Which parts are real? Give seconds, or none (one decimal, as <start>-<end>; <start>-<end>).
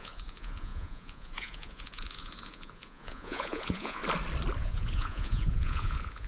4.0-4.6